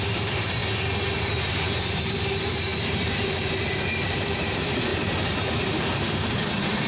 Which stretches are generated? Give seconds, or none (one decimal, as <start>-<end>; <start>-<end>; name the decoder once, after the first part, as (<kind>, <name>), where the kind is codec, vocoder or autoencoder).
0.0-0.6 (vocoder, BigVGAN v2); 1.2-2.7; 3.4-4.9; 5.4-6.9